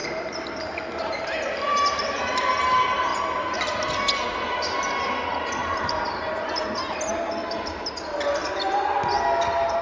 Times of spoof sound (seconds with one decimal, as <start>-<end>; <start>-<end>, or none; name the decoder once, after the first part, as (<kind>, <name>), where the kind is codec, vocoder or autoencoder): 0.0-2.2 (vocoder, BigVGAN v2); 5.6-6.2